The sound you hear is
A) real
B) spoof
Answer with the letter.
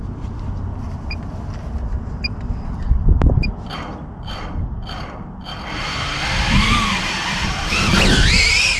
A